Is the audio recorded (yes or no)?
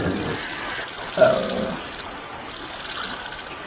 yes